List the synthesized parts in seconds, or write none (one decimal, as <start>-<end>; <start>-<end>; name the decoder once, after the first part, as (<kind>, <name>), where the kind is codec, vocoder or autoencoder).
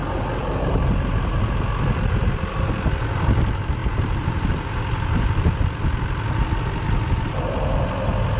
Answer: none